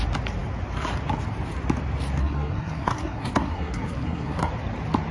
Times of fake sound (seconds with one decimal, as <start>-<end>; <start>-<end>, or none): 2.2-4.5